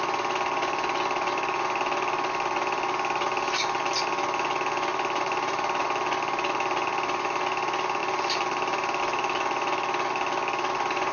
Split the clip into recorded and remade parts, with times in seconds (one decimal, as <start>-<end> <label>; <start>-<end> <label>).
0.0-4.9 recorded; 4.9-5.8 remade; 5.8-8.0 recorded; 8.0-9.0 remade; 9.0-11.1 recorded